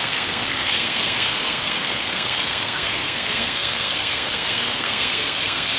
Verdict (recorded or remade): remade